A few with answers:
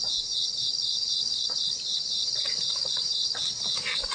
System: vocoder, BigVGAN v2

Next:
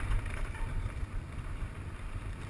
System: vocoder, BigVGAN v2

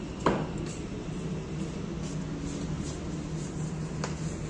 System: none